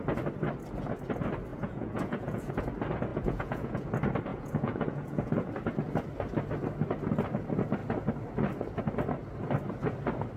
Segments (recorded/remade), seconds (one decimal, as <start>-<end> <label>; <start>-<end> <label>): 0.0-1.5 recorded; 1.5-2.5 remade; 2.5-3.1 recorded; 3.1-3.9 remade; 3.9-4.3 recorded; 4.3-5.5 remade; 5.5-10.4 recorded